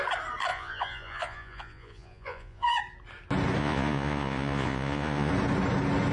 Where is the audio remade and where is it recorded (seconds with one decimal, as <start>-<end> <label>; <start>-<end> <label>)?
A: 0.0-0.5 recorded; 0.5-2.8 remade; 2.8-3.6 recorded; 3.6-5.3 remade; 5.3-6.1 recorded